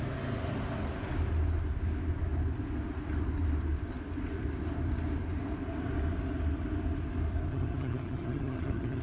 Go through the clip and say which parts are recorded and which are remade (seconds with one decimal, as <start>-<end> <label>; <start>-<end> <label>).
0.0-7.5 recorded; 7.5-9.0 remade